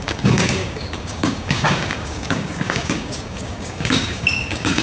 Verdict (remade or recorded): remade